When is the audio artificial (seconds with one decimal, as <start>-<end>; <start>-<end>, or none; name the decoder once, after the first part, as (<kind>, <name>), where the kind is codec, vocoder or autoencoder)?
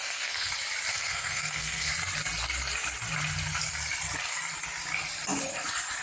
0.0-0.5 (codec, SNAC); 0.9-1.9